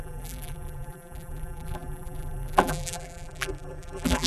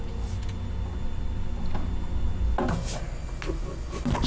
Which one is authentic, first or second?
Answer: second